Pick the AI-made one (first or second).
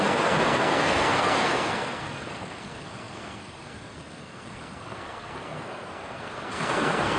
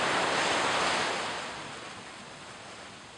first